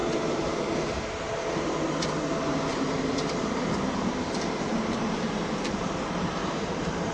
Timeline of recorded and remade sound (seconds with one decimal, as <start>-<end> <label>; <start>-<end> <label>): 0.0-0.9 remade; 0.9-2.7 recorded; 2.7-7.1 remade